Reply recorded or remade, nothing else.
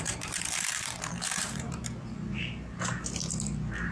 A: remade